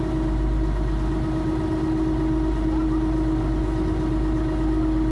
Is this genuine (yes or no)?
yes